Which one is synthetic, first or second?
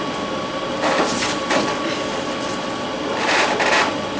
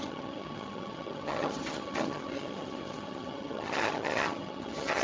second